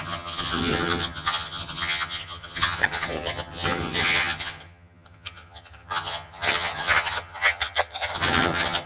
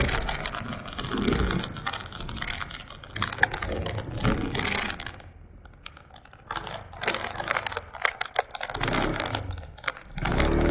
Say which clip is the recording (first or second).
second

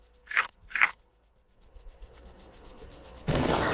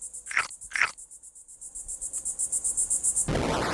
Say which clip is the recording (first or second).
second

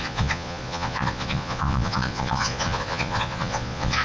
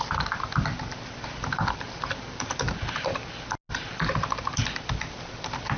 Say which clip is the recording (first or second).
second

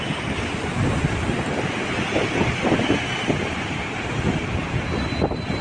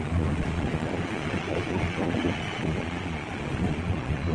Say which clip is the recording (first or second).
first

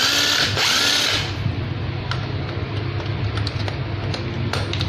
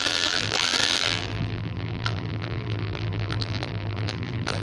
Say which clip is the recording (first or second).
first